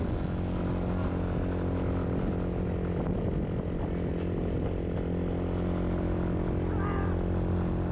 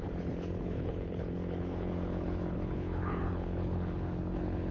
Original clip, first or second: first